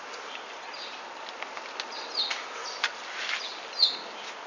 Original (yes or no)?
yes